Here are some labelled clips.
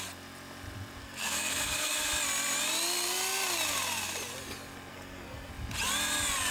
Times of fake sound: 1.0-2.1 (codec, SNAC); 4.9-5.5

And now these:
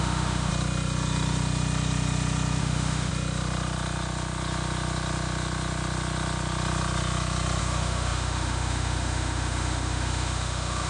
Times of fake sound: 0.0-0.5 (autoencoder, DAC-VAE); 2.6-3.1; 7.6-10.9